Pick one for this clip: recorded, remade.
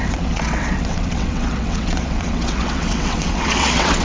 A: remade